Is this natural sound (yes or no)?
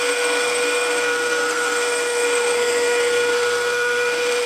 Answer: no